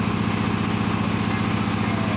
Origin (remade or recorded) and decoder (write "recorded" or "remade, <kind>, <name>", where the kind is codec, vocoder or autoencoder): recorded